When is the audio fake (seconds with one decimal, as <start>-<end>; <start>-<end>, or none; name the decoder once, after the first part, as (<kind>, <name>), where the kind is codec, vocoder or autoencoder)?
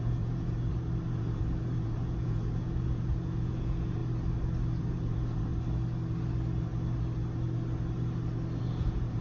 0.0-0.7 (vocoder, Vocos); 1.2-4.0; 4.8-5.5; 8.6-9.2